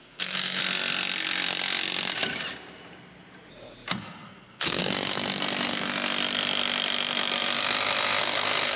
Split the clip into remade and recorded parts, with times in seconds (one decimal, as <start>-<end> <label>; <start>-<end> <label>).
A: 0.0-0.6 remade; 0.6-4.0 recorded; 4.0-4.8 remade; 4.8-8.2 recorded; 8.2-8.8 remade